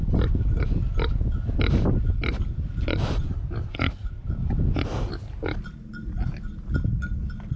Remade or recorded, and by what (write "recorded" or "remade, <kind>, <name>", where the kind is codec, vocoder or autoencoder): recorded